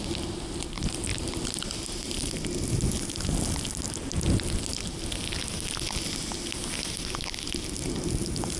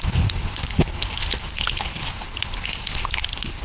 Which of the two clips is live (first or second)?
first